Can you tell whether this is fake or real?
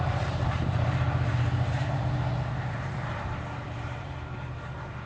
fake